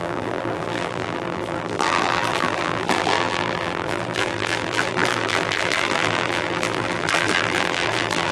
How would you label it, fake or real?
fake